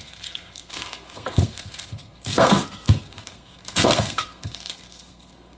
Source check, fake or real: fake